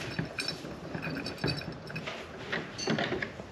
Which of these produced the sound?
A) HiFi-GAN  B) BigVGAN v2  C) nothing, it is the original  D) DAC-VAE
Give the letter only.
C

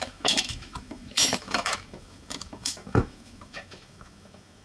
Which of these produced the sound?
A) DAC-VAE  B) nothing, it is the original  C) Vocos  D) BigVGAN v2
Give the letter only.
A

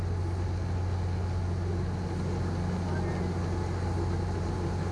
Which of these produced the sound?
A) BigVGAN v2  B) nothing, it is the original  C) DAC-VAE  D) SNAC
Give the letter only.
B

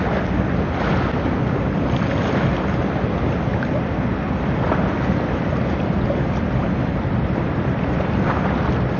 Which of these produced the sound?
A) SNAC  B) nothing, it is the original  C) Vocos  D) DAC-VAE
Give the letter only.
B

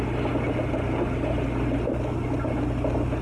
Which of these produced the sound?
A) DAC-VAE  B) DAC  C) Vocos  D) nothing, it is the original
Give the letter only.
D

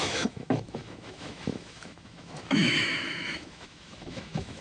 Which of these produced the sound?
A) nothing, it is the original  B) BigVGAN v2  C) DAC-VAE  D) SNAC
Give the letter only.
C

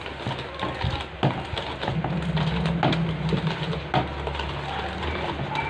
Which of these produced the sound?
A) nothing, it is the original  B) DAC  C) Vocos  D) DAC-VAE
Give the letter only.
A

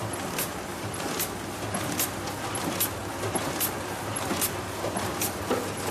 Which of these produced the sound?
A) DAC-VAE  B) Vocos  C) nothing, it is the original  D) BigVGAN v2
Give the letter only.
C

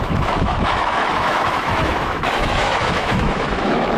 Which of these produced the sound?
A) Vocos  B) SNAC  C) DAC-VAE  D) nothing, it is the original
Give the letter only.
C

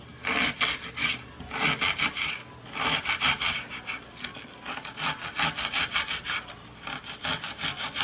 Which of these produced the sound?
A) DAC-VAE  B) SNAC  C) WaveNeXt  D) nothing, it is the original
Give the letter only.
D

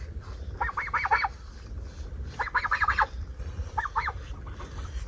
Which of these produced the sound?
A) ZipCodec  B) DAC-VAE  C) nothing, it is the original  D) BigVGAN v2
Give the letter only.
C